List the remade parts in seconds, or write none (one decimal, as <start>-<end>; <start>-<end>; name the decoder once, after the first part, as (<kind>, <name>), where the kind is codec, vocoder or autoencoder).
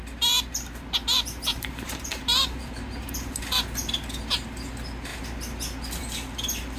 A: 1.5-3.4 (vocoder, BigVGAN v2)